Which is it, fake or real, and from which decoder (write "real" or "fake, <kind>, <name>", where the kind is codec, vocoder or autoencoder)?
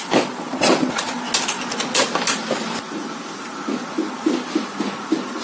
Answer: real